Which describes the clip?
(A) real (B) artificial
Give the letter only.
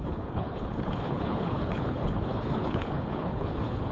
B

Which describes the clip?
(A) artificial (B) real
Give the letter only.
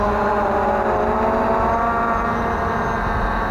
B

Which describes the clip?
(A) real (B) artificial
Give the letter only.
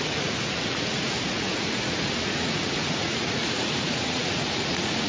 B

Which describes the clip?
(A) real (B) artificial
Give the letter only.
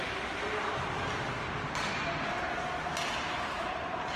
A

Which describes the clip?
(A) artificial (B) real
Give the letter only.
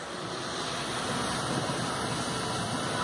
B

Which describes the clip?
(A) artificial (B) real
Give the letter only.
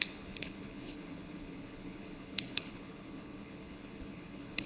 A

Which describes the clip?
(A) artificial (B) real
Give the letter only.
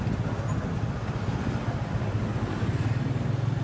B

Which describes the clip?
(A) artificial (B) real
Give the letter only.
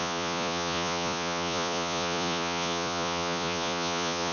A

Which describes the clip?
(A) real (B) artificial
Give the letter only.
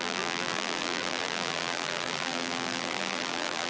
B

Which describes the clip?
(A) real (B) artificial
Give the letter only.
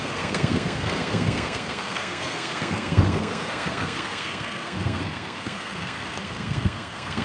B